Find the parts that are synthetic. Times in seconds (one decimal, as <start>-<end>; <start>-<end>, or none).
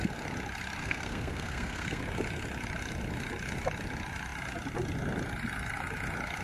0.8-2.0